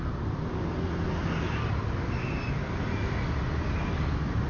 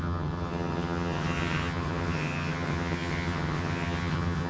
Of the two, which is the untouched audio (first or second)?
first